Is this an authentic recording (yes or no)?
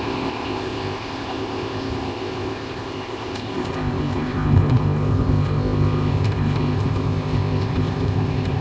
no